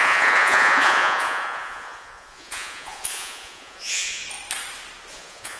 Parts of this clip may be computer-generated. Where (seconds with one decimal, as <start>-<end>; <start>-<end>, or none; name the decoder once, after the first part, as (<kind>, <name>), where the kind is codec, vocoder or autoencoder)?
0.0-4.2 (vocoder, Vocos); 5.1-5.6